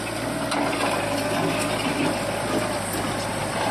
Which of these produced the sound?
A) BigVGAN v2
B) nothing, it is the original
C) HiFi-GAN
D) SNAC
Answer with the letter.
B